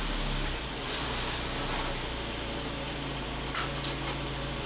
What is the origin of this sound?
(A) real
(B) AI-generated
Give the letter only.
A